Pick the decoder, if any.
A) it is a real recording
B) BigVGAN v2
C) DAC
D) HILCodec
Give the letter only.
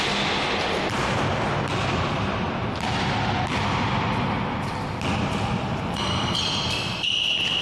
A